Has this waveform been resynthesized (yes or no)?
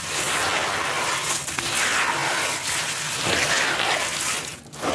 no